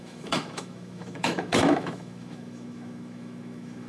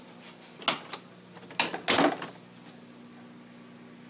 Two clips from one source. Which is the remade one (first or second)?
first